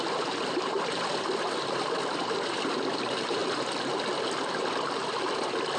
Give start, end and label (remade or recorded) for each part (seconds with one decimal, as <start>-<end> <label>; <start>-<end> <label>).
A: 0.0-5.8 recorded